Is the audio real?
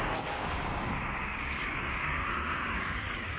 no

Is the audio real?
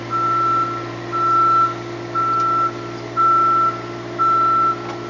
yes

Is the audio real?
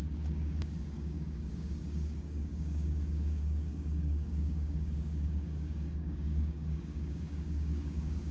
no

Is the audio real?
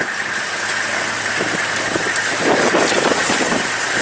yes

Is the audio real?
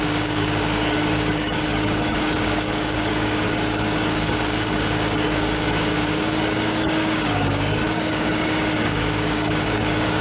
no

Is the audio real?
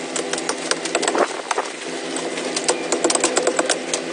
yes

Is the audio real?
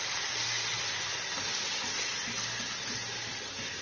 yes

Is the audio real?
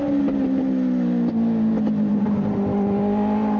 yes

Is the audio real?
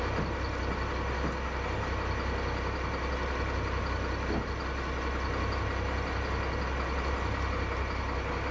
yes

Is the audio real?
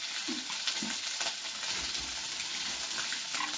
yes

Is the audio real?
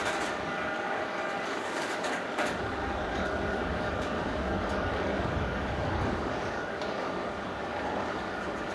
no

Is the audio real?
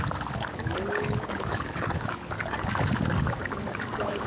no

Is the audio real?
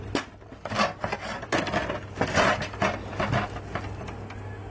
yes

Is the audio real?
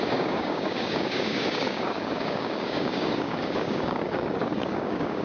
no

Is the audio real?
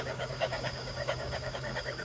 no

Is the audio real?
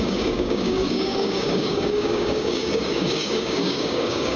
no